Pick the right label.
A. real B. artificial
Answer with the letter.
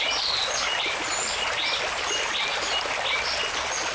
A